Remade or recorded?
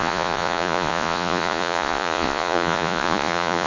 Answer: remade